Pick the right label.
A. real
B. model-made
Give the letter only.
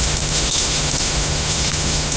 B